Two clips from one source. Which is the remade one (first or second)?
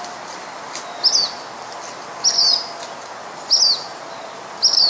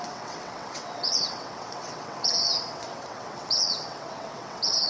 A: second